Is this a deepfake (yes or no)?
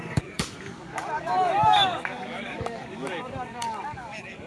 yes